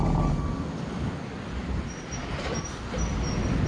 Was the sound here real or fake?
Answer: real